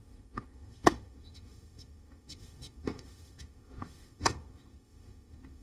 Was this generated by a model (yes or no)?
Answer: yes